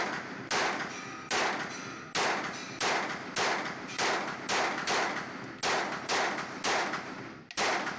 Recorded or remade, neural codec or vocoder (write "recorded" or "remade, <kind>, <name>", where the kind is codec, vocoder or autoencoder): recorded